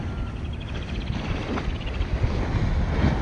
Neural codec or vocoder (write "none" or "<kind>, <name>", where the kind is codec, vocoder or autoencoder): none